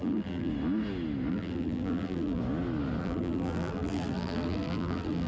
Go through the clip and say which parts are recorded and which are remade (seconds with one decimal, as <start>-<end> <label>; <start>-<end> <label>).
0.0-0.5 remade; 0.5-1.3 recorded; 1.3-2.4 remade; 2.4-3.0 recorded; 3.0-5.3 remade